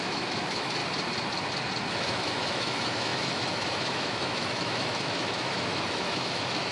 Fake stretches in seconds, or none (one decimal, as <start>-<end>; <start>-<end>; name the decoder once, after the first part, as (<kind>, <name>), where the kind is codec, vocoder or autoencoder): 0.0-0.8 (autoencoder, DAC-VAE); 1.9-6.7